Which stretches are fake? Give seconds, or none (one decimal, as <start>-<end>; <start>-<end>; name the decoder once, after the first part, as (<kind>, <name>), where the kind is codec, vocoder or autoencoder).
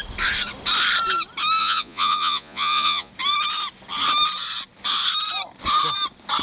1.6-3.1 (vocoder, Vocos)